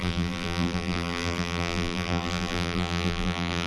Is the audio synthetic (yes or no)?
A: yes